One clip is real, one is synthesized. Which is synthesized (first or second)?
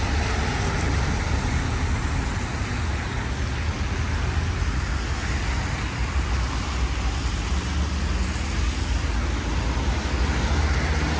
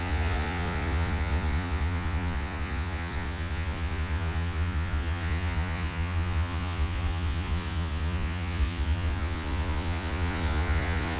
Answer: second